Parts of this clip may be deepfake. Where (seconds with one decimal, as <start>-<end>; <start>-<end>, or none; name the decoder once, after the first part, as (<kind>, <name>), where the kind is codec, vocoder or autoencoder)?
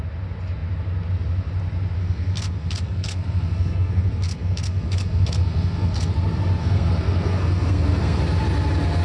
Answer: 2.0-6.1 (codec, SNAC); 6.6-8.2